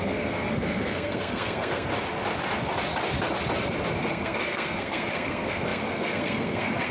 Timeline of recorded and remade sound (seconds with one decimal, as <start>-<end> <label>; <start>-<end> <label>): 0.0-1.9 remade; 1.9-4.1 recorded; 4.1-6.9 remade